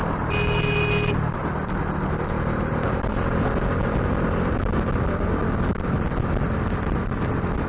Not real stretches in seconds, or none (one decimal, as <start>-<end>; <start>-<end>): none